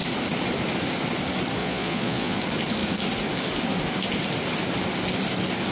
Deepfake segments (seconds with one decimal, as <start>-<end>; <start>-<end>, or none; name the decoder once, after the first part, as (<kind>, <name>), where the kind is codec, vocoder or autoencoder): 1.6-2.4 (vocoder, Vocos)